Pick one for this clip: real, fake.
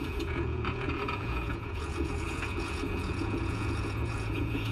fake